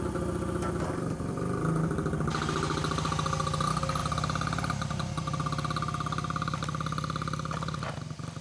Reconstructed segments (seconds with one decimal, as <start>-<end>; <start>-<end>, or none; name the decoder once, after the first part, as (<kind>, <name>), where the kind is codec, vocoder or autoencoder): none

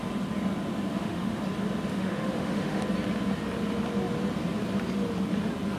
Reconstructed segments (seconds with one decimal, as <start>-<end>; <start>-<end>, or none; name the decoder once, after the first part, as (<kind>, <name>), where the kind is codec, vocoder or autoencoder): 0.9-1.4 (autoencoder, DAC-VAE); 1.9-2.8

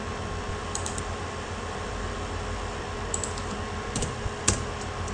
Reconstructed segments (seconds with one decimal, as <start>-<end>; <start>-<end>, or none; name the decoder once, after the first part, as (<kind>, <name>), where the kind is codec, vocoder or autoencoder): 0.5-2.8 (vocoder, BigVGAN v2); 4.0-4.5

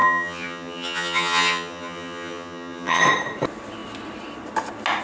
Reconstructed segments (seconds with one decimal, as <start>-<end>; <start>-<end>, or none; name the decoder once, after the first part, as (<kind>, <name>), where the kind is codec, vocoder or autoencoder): 0.0-3.0 (vocoder, HiFi-GAN)